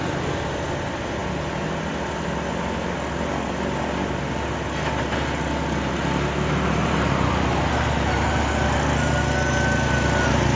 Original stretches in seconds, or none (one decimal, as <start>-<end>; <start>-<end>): 0.0-10.6